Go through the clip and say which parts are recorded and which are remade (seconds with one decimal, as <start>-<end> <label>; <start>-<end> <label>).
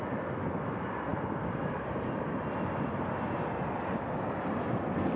0.0-1.1 recorded; 1.1-2.4 remade; 2.4-5.2 recorded